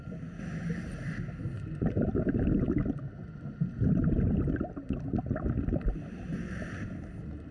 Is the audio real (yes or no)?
yes